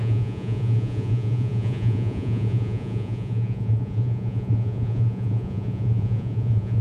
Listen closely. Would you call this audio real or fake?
fake